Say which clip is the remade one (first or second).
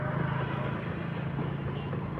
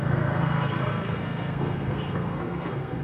second